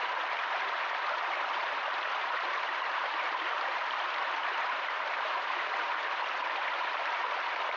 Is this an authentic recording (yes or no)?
no